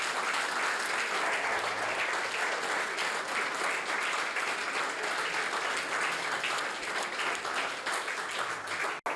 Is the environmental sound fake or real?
real